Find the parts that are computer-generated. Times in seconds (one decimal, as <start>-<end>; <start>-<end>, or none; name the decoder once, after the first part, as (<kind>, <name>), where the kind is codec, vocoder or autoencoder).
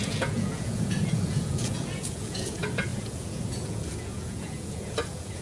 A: 0.0-5.4 (vocoder, Vocos)